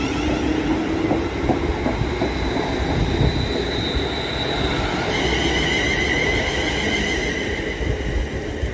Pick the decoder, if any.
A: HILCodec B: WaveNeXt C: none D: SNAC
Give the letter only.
C